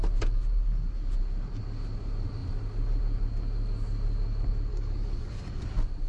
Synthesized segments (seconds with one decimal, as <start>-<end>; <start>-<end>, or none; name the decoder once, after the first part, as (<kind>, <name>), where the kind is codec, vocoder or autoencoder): 4.7-5.6 (codec, DAC)